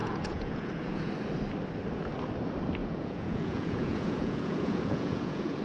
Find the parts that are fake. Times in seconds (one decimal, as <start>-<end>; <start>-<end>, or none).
0.0-1.1; 2.8-5.6